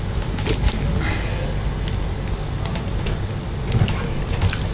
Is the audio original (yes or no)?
yes